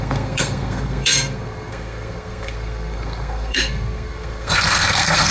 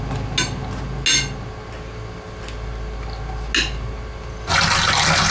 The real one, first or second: second